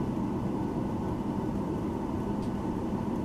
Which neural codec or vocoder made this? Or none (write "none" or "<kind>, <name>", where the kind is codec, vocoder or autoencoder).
vocoder, BigVGAN v2